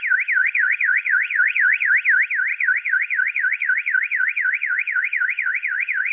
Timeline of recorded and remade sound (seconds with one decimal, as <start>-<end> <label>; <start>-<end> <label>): 0.0-0.4 recorded; 0.4-1.9 remade; 1.9-2.5 recorded; 2.5-6.1 remade